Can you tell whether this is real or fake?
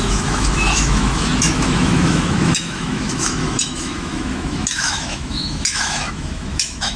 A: fake